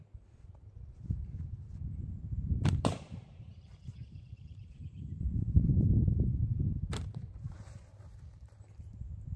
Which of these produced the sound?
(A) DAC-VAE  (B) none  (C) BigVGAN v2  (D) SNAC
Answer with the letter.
C